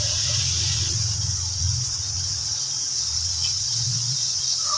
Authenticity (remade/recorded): remade